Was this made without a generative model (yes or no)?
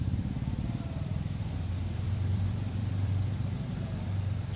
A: no